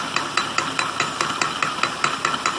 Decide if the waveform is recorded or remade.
recorded